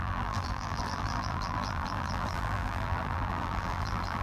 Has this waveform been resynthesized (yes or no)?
yes